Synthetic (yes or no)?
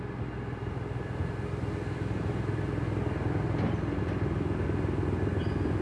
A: no